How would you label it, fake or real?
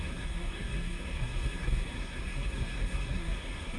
fake